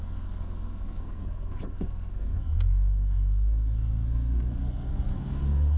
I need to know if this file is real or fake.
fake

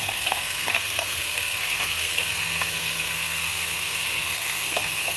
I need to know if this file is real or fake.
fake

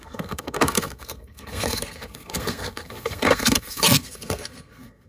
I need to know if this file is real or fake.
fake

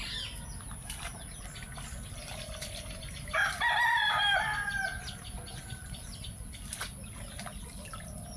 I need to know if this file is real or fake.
real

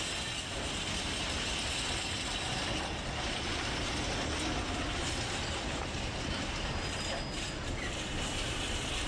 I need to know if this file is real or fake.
real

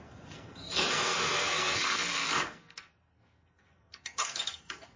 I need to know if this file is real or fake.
fake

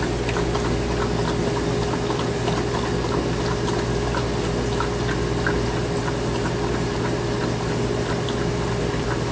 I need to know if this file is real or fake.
real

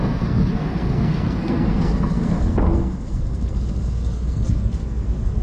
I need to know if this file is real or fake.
fake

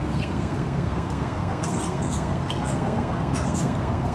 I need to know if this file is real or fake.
fake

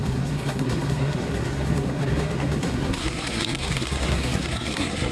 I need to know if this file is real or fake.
fake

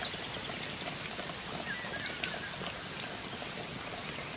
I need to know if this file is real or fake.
real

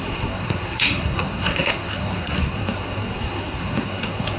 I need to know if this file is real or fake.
fake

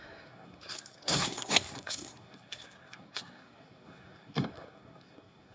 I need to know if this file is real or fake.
fake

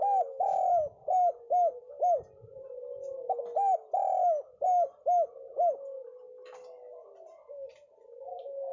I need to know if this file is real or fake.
real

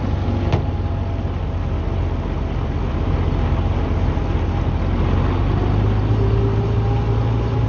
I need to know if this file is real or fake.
real